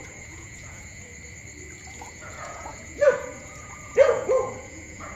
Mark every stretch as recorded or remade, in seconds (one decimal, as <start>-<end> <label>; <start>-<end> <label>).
0.0-1.1 remade; 1.1-2.0 recorded; 2.0-5.2 remade